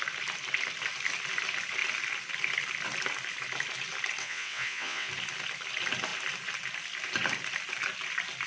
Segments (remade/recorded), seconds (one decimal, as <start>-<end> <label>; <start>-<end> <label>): 0.0-4.2 recorded; 4.2-5.1 remade; 5.1-8.5 recorded